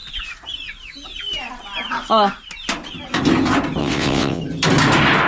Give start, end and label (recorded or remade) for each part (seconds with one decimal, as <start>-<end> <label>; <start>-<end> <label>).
0.0-3.8 recorded; 3.8-4.4 remade; 4.4-5.3 recorded